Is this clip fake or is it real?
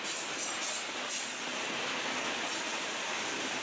fake